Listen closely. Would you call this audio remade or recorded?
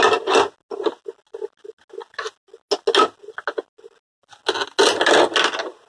recorded